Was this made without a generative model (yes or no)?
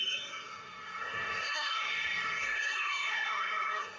no